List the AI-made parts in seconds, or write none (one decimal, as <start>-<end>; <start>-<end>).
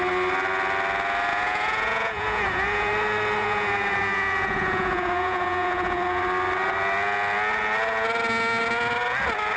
1.3-2.9; 3.4-6.2